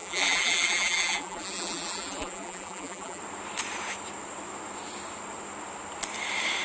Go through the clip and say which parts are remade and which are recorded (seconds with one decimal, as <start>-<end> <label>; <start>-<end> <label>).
0.0-3.2 remade; 3.2-6.6 recorded